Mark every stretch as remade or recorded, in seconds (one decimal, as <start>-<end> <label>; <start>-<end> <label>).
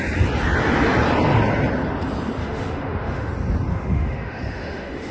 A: 0.0-2.4 recorded; 2.4-3.3 remade; 3.3-3.7 recorded; 3.7-5.1 remade